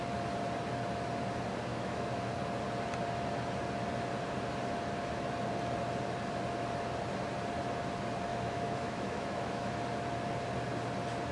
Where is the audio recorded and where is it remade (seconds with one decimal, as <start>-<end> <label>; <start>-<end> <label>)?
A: 0.0-1.7 recorded; 1.7-2.3 remade; 2.3-8.3 recorded; 8.3-9.8 remade; 9.8-11.3 recorded